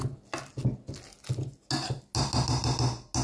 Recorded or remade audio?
recorded